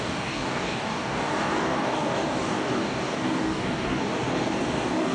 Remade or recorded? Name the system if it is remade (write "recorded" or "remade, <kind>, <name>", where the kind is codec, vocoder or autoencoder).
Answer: remade, codec, DAC